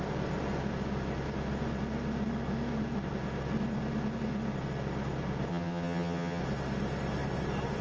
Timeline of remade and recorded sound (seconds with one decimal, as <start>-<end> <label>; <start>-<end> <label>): 0.0-5.5 recorded; 5.5-6.4 remade; 6.4-7.8 recorded